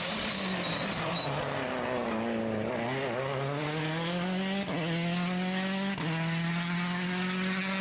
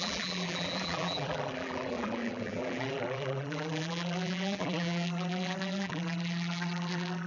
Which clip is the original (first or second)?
first